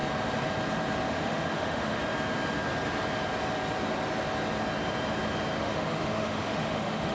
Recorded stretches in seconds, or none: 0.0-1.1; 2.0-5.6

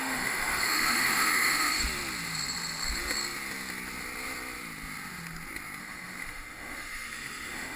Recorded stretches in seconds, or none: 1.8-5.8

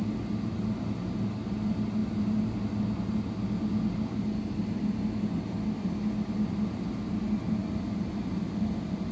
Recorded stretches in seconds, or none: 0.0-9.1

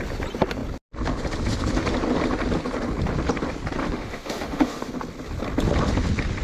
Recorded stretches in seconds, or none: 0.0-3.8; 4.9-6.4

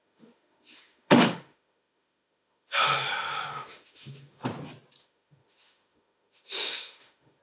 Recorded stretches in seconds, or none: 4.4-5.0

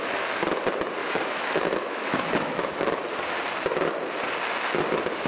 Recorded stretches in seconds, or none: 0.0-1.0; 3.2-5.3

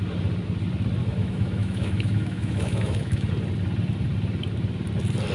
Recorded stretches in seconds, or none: 0.0-1.0; 3.3-5.3